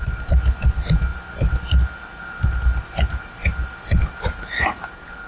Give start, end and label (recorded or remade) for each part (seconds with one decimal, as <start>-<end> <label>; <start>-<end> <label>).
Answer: 0.0-5.3 recorded